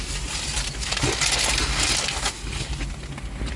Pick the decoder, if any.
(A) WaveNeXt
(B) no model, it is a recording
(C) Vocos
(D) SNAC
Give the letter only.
B